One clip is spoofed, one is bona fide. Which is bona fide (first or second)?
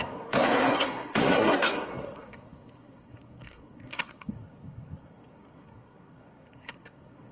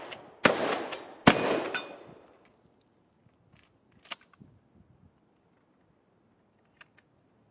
second